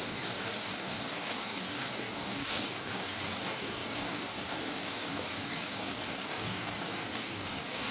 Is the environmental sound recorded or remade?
remade